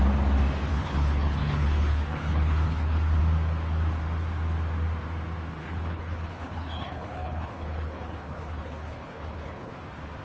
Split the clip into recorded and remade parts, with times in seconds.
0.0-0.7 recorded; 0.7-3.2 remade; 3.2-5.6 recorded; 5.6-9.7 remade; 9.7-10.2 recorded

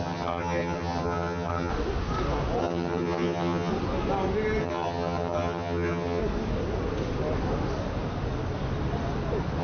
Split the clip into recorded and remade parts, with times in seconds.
0.0-1.7 remade; 1.7-2.6 recorded; 2.6-3.7 remade; 3.7-4.6 recorded; 4.6-6.2 remade; 6.2-9.6 recorded

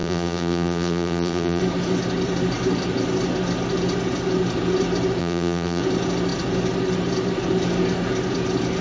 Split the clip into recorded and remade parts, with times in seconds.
0.0-1.6 remade; 1.6-5.2 recorded; 5.2-5.8 remade; 5.8-8.8 recorded

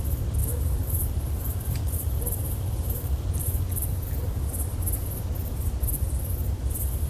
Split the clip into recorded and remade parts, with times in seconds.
0.0-0.4 recorded; 0.4-4.4 remade; 4.4-7.1 recorded

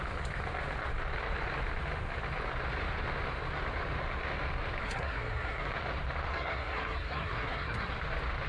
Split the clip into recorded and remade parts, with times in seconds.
0.0-4.8 recorded; 4.8-5.7 remade; 5.7-6.3 recorded; 6.3-7.9 remade; 7.9-8.5 recorded

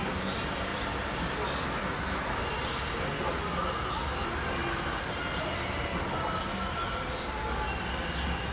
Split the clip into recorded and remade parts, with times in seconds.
0.0-8.5 recorded